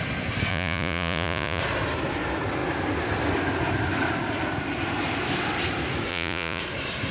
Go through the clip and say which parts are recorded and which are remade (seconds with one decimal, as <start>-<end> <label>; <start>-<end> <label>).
0.0-0.5 recorded; 0.5-1.6 remade; 1.6-6.1 recorded; 6.1-6.6 remade; 6.6-7.1 recorded